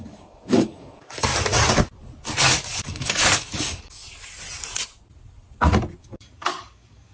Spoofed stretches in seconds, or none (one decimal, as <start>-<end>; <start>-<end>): 0.0-1.3; 2.8-4.0; 6.0-7.1